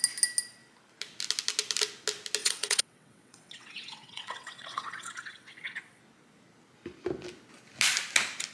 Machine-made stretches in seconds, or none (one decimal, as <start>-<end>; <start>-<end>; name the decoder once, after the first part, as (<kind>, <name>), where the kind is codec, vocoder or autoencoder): 2.4-6.0 (vocoder, WaveNeXt)